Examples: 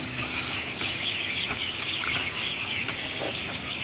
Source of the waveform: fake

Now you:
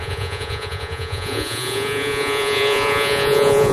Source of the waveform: fake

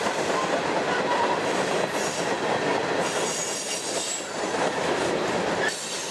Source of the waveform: real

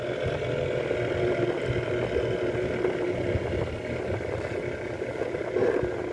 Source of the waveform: real